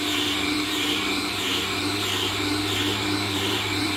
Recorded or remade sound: remade